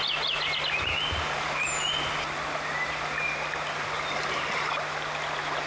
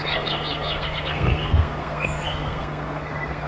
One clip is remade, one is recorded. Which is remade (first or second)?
second